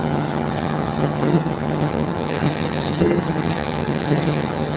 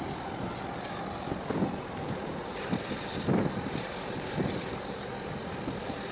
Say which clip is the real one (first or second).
second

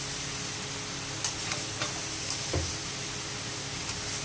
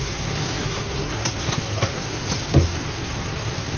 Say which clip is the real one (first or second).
first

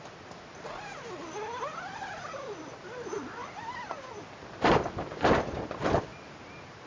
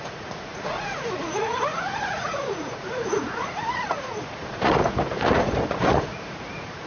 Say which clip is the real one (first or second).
first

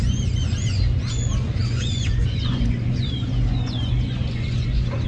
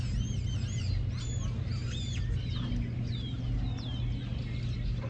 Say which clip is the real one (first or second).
second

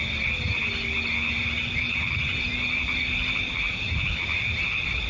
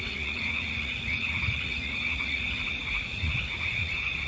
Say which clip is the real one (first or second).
first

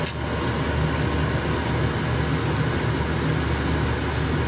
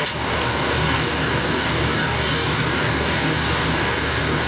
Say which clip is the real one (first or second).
first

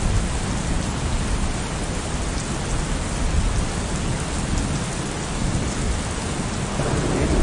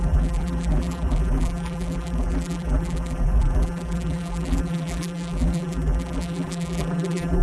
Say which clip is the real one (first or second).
first